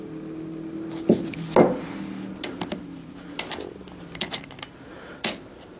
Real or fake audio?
real